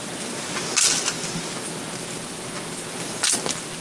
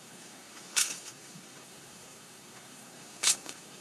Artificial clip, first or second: second